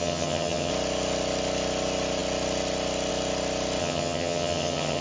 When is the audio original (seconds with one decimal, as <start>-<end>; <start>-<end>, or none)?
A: 0.7-3.8